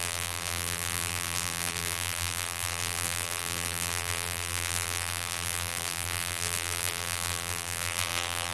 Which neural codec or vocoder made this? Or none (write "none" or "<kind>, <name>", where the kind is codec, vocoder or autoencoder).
vocoder, BigVGAN v2